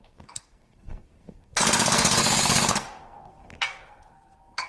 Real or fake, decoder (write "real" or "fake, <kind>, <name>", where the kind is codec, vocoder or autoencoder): fake, codec, SNAC